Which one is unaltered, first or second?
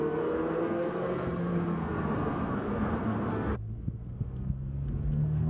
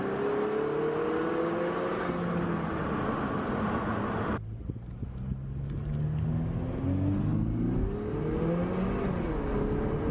second